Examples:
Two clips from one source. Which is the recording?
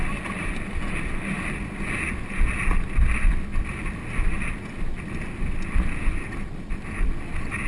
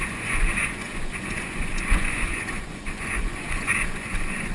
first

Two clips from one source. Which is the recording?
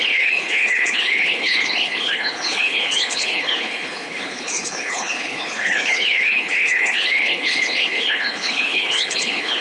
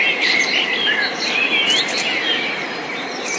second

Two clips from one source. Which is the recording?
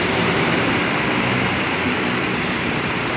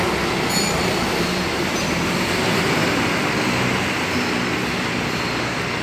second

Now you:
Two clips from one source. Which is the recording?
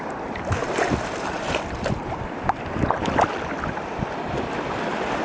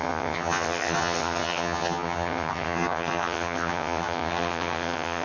first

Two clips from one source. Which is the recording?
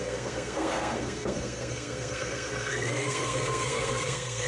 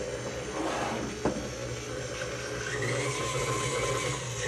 second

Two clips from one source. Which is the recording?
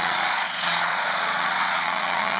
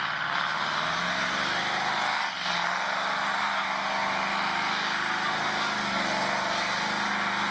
second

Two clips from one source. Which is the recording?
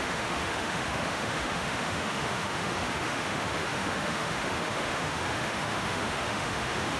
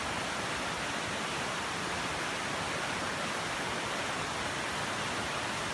second